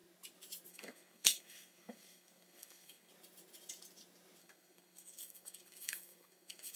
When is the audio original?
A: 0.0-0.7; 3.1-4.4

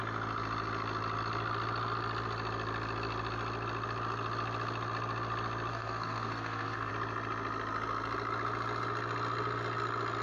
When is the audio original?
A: 0.0-5.7; 6.9-10.2

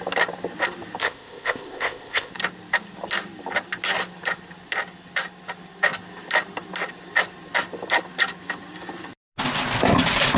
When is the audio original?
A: 0.0-1.0; 2.3-10.4

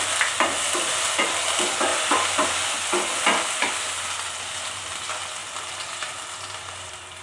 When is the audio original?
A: 0.0-7.2

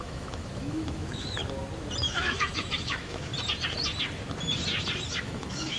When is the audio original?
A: 1.4-2.0; 3.3-5.2